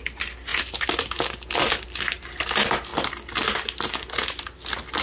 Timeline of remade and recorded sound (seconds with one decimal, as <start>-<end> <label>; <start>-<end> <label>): 0.0-5.0 recorded